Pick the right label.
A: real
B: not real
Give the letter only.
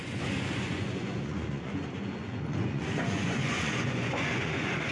B